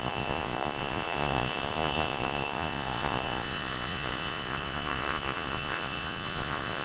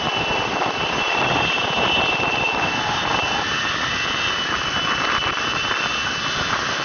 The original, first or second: second